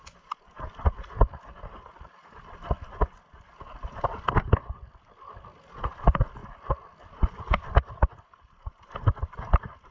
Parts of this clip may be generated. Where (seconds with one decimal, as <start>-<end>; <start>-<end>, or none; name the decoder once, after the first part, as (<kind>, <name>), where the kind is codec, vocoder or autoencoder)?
none